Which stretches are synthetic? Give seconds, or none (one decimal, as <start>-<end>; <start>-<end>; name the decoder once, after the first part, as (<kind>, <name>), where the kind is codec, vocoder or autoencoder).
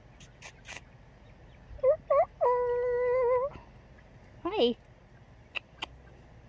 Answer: none